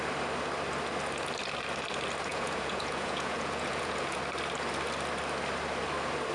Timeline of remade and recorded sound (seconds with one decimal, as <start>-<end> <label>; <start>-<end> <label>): 0.0-2.3 recorded; 2.3-4.2 remade; 4.2-6.3 recorded